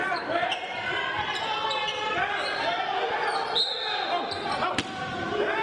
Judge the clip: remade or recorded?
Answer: recorded